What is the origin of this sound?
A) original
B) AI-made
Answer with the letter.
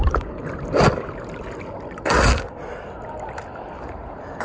A